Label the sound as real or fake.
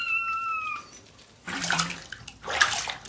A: real